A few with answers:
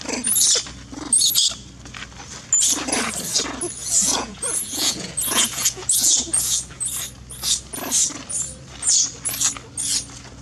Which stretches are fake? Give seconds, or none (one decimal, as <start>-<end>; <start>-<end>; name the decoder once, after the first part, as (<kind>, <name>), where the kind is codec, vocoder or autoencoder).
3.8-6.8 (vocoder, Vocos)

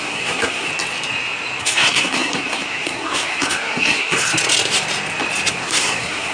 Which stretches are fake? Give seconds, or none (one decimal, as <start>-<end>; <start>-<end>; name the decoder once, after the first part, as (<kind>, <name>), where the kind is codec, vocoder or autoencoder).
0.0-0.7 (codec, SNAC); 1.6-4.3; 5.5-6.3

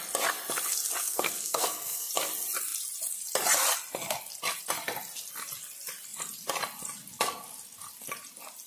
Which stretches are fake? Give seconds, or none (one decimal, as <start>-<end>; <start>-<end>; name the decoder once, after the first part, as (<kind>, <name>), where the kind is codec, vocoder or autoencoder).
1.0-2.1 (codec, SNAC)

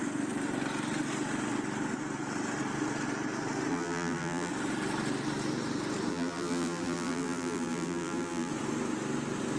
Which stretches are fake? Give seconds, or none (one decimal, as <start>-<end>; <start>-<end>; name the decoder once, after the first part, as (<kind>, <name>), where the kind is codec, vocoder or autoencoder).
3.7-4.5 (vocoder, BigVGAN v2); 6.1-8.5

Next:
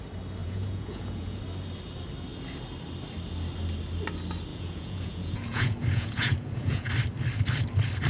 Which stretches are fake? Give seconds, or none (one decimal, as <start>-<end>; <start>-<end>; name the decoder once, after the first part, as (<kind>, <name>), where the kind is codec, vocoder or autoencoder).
0.4-1.4 (vocoder, Vocos); 4.5-6.9

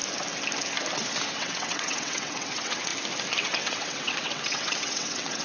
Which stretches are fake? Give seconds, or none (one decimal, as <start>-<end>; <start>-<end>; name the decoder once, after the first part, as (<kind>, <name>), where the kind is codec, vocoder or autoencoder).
1.3-2.9 (vocoder, WaveNeXt); 3.4-5.4

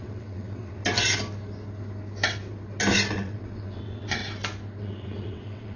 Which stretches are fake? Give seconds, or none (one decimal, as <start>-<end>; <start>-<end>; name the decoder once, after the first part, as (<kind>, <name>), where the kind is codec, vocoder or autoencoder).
0.0-0.8 (vocoder, WaveNeXt); 3.1-4.2; 4.8-5.8

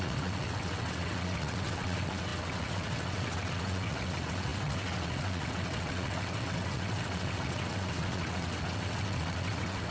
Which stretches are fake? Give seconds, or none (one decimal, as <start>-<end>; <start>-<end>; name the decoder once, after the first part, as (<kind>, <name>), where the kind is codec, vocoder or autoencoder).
0.0-9.9 (vocoder, WaveNeXt)